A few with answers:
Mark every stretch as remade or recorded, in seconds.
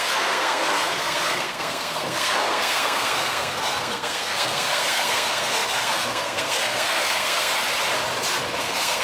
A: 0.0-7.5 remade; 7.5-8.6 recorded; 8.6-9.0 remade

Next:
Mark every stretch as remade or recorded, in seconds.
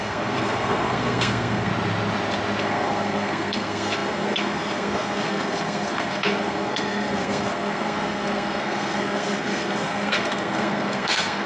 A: 0.0-1.7 remade; 1.7-2.6 recorded; 2.6-11.5 remade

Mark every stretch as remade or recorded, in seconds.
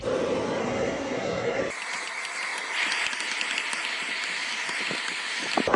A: 0.0-0.6 recorded; 0.6-1.6 remade; 1.6-5.8 recorded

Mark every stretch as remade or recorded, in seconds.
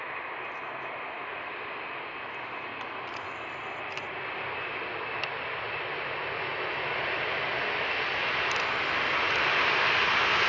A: 0.0-10.5 recorded